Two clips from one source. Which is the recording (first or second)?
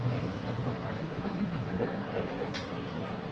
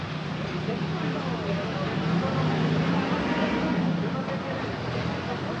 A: second